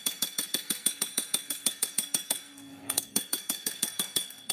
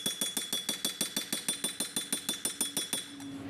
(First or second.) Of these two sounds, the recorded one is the second